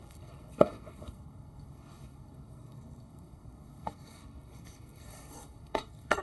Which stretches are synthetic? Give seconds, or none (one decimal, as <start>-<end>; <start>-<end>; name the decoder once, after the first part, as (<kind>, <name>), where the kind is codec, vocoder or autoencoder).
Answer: 0.0-6.2 (codec, SNAC)